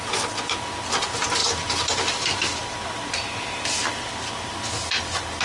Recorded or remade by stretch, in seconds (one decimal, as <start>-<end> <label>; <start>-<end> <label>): 0.0-5.4 recorded